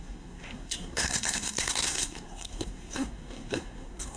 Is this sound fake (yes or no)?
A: yes